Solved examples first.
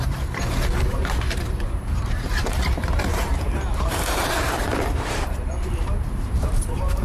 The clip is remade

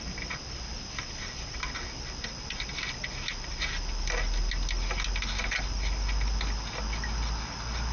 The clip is recorded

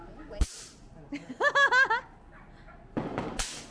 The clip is recorded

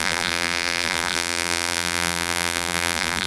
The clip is remade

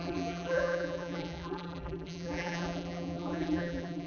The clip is remade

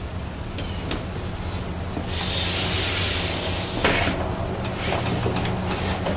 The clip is recorded